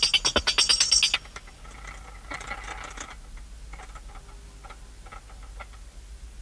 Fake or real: real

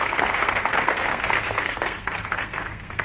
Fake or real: fake